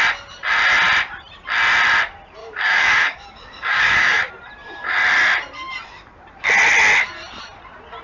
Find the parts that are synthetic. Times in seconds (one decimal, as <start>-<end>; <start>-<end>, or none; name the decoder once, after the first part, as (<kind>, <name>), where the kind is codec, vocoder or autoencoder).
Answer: 2.4-4.3 (codec, DAC)